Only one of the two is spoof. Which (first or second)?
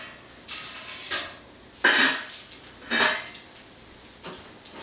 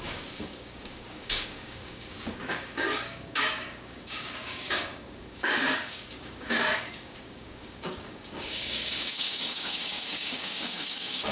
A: second